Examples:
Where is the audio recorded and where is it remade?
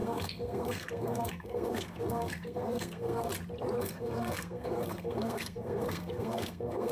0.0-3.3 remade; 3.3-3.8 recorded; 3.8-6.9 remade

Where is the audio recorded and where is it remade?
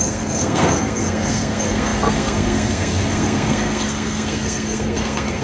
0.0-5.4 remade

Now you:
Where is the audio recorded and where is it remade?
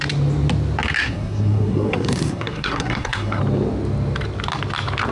0.0-1.0 recorded; 1.0-3.4 remade; 3.4-5.1 recorded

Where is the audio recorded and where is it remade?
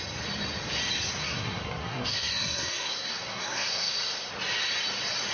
0.0-1.2 recorded; 1.2-4.3 remade; 4.3-5.3 recorded